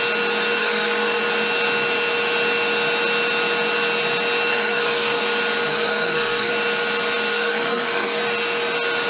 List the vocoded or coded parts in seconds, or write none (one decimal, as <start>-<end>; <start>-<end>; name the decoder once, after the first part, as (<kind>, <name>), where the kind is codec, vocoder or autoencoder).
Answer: 0.6-1.2 (codec, SNAC); 4.5-5.2; 5.7-6.5; 7.3-8.2